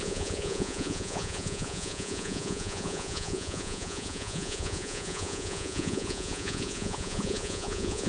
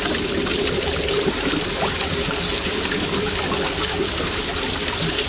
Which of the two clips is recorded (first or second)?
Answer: second